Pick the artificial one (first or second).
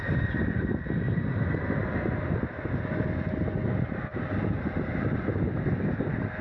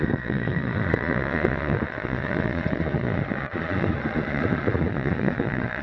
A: second